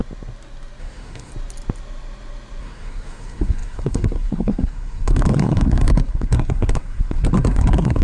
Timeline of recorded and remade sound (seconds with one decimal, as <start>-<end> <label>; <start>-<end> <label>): 0.0-0.8 recorded; 0.8-1.3 remade; 1.3-2.6 recorded; 2.6-8.0 remade